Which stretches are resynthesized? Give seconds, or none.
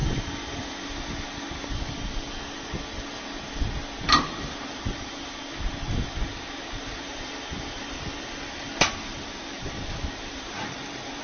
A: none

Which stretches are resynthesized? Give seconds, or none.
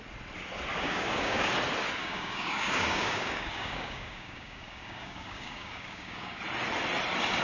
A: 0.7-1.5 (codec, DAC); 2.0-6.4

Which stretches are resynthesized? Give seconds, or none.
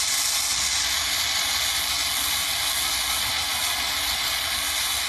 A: none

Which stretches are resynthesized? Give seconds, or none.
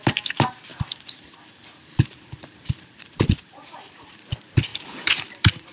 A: 0.7-4.1 (vocoder, BigVGAN v2); 4.7-5.7